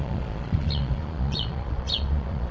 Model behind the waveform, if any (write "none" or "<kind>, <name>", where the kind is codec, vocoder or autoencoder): vocoder, Vocos